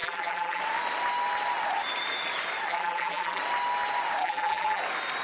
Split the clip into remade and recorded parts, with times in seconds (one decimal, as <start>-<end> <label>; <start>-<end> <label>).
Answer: 0.0-0.6 remade; 0.6-2.7 recorded; 2.7-3.4 remade; 3.4-4.2 recorded; 4.2-4.8 remade; 4.8-5.2 recorded